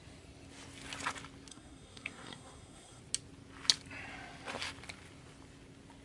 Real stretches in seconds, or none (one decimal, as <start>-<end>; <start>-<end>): 0.0-1.5; 3.0-6.0